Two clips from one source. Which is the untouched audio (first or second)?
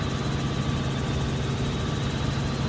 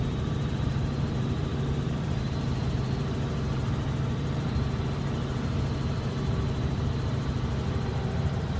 first